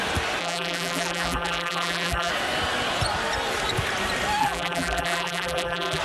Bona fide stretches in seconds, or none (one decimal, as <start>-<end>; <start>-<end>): 0.0-0.4; 2.3-4.4